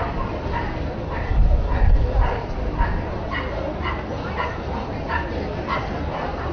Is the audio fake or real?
real